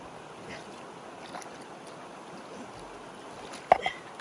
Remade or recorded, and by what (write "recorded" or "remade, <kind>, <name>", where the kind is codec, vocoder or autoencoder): recorded